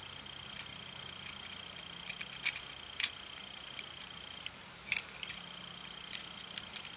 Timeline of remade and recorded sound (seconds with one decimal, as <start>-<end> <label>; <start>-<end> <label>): 0.0-3.4 recorded; 3.4-6.6 remade; 6.6-7.0 recorded